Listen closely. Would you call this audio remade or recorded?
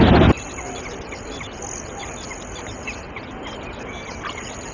recorded